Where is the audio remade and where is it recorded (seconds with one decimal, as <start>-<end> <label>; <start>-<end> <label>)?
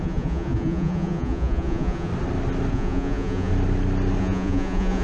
0.0-2.1 remade; 2.1-2.7 recorded; 2.7-3.5 remade; 3.5-4.2 recorded; 4.2-5.0 remade